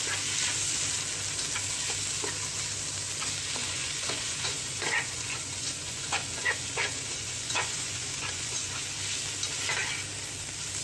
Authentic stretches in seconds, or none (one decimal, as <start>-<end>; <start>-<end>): 0.0-3.6; 8.8-10.8